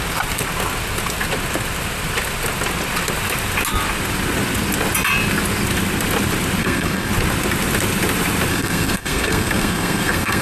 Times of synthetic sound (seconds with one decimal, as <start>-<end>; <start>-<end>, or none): 6.6-7.1; 8.5-10.4